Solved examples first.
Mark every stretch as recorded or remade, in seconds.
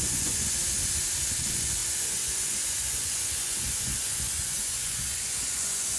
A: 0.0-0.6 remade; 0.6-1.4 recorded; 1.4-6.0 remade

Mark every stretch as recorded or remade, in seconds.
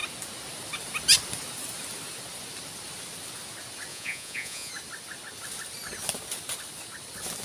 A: 0.0-3.9 recorded; 3.9-4.7 remade; 4.7-7.4 recorded